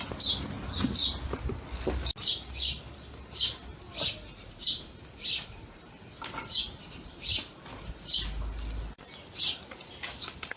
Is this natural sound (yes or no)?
yes